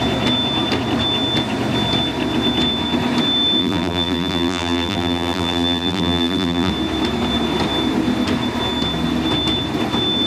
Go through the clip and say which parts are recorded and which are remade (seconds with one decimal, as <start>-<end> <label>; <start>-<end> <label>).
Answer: 0.0-3.6 recorded; 3.6-6.7 remade; 6.7-10.3 recorded